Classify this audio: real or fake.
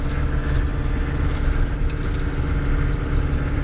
real